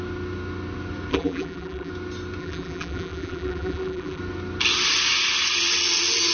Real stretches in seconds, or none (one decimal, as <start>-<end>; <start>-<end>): 0.0-1.1; 1.9-2.4; 4.2-6.3